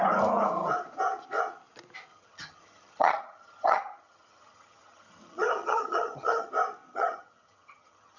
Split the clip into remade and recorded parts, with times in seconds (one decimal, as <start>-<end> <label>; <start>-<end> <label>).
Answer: 0.0-2.1 recorded; 2.1-6.5 remade; 6.5-6.9 recorded; 6.9-8.2 remade